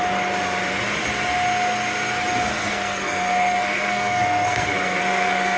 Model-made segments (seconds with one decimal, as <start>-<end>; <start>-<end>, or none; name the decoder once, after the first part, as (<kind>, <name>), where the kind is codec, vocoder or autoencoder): 2.6-5.6 (codec, SNAC)